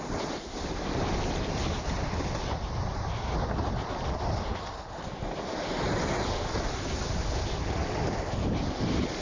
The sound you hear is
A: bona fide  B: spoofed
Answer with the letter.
A